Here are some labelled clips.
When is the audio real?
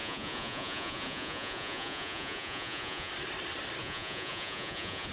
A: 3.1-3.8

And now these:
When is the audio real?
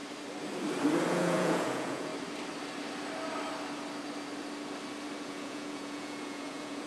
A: 0.0-1.1; 2.1-5.2